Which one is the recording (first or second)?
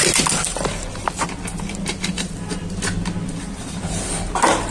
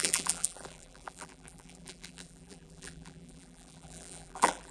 first